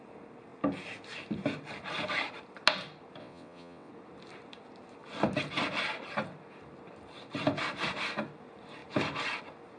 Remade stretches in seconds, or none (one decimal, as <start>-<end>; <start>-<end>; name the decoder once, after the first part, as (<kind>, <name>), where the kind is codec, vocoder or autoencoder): 3.2-3.9 (vocoder, WaveNeXt)